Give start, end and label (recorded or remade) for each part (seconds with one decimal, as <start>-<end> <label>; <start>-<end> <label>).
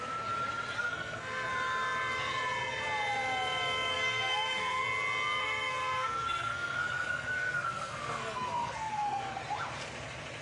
0.0-0.8 recorded; 0.8-1.5 remade; 1.5-3.9 recorded; 3.9-4.8 remade; 4.8-5.4 recorded; 5.4-9.4 remade; 9.4-10.4 recorded